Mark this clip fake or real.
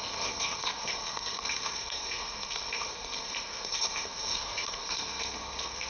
fake